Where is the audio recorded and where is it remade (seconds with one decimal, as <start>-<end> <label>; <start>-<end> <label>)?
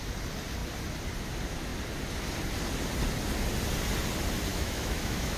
0.0-4.5 recorded; 4.5-5.4 remade